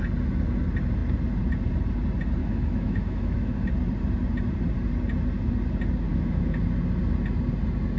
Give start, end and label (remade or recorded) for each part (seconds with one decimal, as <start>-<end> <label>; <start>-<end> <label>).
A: 0.0-2.4 recorded; 2.4-3.7 remade; 3.7-6.1 recorded; 6.1-6.6 remade; 6.6-8.0 recorded